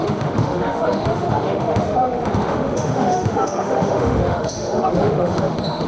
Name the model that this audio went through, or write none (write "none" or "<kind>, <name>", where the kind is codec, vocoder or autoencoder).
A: autoencoder, DAC-VAE